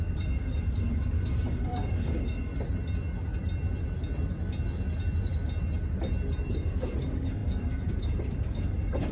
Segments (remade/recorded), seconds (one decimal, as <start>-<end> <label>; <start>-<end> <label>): 0.0-2.5 remade; 2.5-6.5 recorded; 6.5-9.1 remade